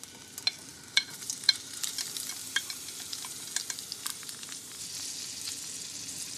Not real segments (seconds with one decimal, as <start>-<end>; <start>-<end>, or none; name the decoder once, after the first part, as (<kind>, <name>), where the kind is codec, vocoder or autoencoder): 0.7-1.9 (vocoder, BigVGAN v2); 4.1-4.8